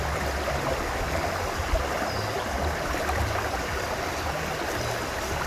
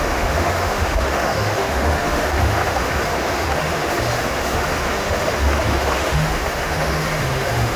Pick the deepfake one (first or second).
second